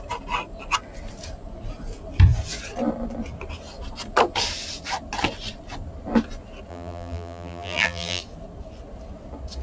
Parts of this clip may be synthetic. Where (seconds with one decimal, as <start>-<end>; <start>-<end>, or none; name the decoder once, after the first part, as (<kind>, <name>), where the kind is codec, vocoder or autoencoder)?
6.7-8.2 (vocoder, BigVGAN v2)